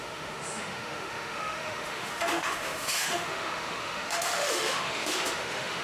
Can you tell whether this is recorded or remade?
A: remade